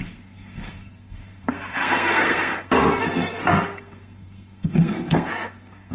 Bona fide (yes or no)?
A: no